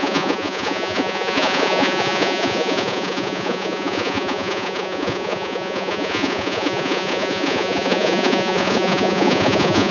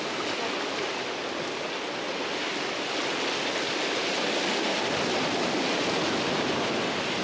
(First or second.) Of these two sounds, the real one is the second